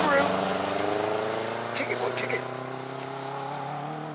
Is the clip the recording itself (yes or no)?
yes